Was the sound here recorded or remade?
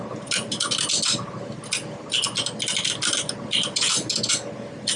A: recorded